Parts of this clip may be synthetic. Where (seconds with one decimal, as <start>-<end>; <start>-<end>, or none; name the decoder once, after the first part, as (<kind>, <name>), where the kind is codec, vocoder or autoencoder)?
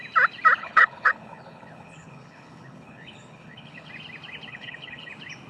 0.6-3.9 (codec, HILCodec); 4.5-5.1